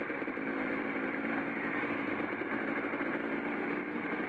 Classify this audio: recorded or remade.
remade